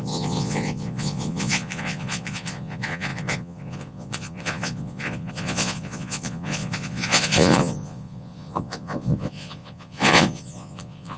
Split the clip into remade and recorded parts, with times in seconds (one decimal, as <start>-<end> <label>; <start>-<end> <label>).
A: 0.0-11.2 remade